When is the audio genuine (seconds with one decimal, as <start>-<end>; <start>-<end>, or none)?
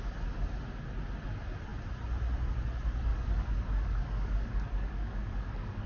0.0-3.1